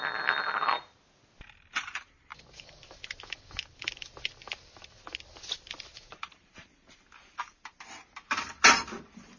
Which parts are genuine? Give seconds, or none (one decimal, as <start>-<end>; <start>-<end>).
0.0-5.9; 6.7-9.4